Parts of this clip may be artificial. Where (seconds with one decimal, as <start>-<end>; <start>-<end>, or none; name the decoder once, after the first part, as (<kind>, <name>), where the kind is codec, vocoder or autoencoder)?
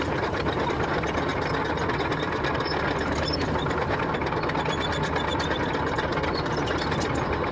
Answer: 0.0-1.3 (vocoder, BigVGAN v2); 2.2-7.5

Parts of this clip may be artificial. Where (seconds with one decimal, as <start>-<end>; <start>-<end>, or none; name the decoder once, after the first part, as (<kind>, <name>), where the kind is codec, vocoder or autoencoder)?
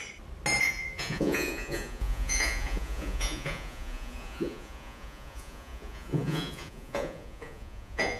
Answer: 0.6-8.2 (vocoder, Vocos)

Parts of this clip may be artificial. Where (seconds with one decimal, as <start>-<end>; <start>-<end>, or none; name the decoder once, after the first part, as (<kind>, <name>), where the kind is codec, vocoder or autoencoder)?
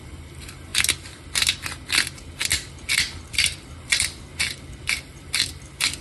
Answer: 0.0-0.7 (vocoder, BigVGAN v2); 3.3-4.3; 4.9-6.0